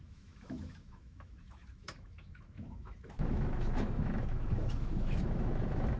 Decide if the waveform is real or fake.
fake